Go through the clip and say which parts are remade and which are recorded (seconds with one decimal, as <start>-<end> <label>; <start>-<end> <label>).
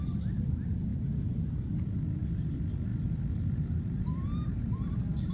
0.0-2.9 recorded; 2.9-3.8 remade; 3.8-5.3 recorded